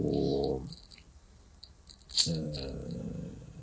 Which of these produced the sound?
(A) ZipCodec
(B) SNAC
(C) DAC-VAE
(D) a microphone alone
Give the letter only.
D